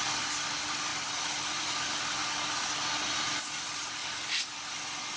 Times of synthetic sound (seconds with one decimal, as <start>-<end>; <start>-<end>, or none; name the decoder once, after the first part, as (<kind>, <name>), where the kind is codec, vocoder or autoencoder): none